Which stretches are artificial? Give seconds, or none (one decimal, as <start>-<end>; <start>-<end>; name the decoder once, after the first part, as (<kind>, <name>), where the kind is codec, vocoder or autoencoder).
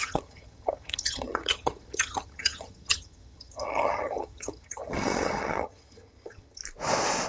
0.0-6.6 (vocoder, HiFi-GAN)